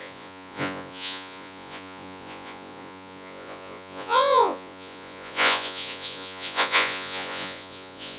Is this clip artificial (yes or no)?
yes